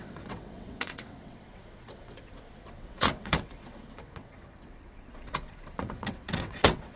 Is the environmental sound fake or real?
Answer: fake